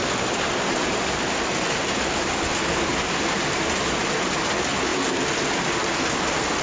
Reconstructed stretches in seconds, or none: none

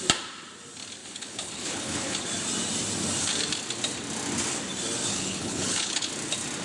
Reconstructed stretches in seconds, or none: 1.0-2.2 (codec, HILCodec); 5.1-6.1